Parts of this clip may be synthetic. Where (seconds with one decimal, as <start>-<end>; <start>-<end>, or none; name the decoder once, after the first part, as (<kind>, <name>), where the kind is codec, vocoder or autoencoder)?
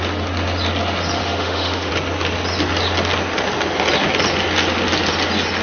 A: 1.2-1.9 (autoencoder, DAC-VAE)